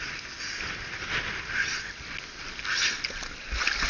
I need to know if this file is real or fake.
real